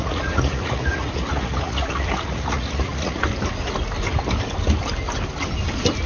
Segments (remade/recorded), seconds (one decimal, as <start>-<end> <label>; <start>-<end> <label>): 0.0-3.2 remade; 3.2-6.1 recorded